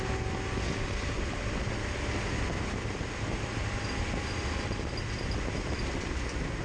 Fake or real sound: real